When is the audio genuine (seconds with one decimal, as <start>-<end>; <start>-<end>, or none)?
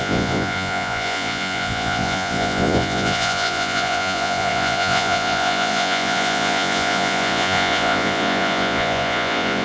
none